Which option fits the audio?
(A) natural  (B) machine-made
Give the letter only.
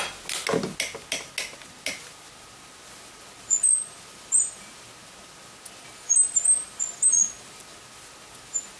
A